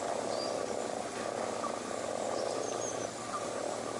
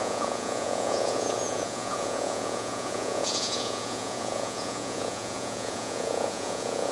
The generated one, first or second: second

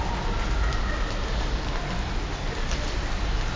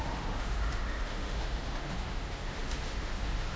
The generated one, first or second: second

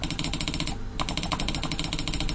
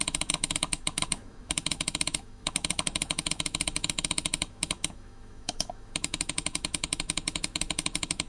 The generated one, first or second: second